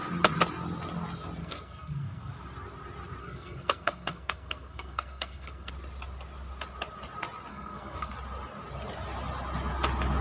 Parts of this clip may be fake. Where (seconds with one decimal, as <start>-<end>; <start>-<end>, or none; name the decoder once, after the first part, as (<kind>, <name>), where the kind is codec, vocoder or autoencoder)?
1.4-2.3 (codec, SNAC); 3.2-5.7; 7.5-8.1